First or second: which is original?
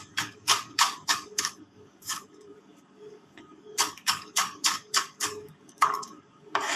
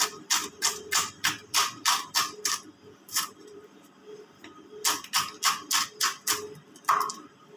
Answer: second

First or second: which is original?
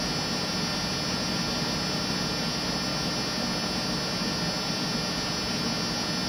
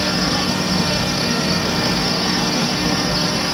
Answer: first